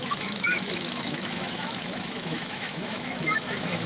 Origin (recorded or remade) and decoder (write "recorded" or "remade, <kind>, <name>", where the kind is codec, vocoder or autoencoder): remade, autoencoder, DAC-VAE